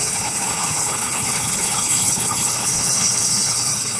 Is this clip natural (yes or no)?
no